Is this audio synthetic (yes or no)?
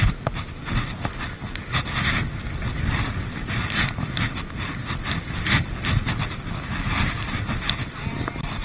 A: no